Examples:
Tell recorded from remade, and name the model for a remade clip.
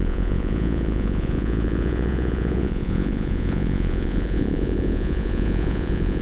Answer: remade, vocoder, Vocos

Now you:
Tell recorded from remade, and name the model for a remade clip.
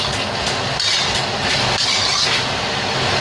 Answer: recorded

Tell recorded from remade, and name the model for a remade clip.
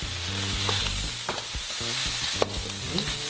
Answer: recorded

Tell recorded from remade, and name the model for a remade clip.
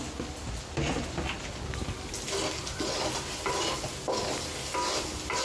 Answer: recorded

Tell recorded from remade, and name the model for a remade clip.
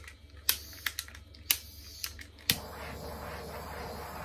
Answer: recorded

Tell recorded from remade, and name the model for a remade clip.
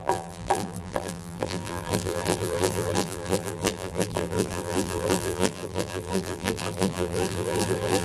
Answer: remade, vocoder, BigVGAN v2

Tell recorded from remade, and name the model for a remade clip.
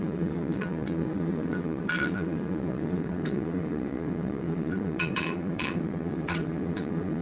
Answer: remade, vocoder, WaveNeXt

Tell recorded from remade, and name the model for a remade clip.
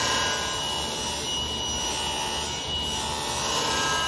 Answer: recorded